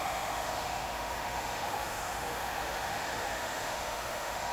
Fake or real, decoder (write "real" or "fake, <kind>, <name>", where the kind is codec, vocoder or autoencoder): fake, autoencoder, DAC-VAE